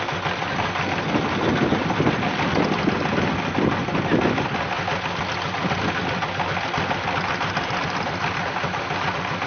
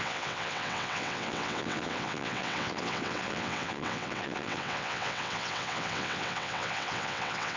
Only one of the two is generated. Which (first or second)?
second